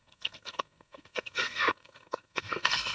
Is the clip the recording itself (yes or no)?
no